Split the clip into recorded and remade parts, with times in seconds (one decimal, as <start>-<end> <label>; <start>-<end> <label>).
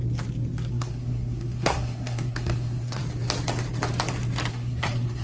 0.0-0.7 recorded; 0.7-3.0 remade; 3.0-4.5 recorded; 4.5-5.2 remade